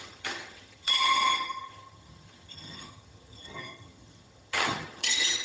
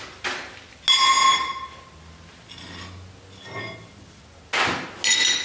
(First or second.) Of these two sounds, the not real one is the first